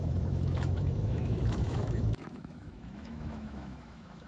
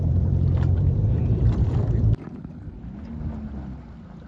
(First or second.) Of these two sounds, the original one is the second